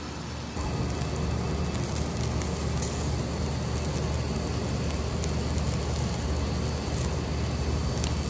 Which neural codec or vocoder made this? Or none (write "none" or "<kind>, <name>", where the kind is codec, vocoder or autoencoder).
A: none